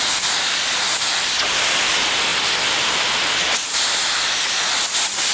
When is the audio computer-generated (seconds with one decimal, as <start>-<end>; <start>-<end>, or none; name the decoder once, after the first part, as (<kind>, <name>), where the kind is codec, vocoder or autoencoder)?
none